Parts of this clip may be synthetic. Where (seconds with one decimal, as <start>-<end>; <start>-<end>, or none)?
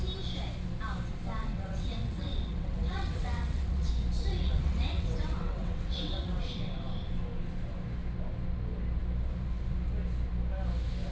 1.4-3.9; 4.3-6.8